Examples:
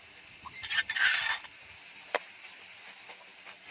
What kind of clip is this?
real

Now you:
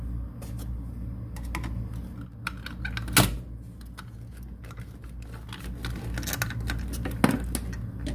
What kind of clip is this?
real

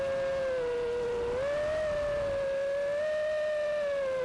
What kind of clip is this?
real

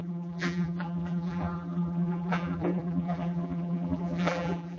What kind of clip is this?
fake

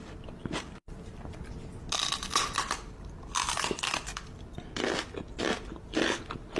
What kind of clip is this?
real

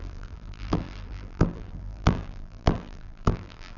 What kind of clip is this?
fake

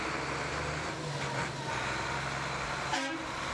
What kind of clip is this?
real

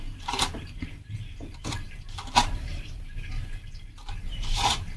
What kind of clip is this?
fake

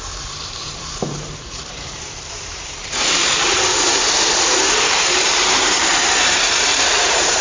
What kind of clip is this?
fake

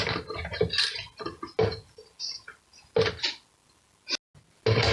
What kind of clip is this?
real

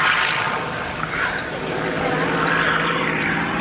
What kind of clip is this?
fake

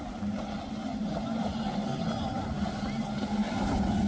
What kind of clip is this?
real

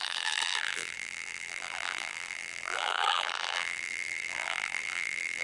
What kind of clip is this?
fake